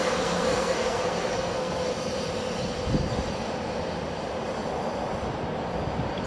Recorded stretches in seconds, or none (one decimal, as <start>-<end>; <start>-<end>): 1.7-6.3